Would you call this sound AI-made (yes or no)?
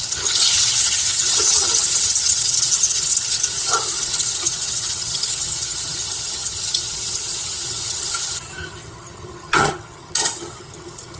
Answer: yes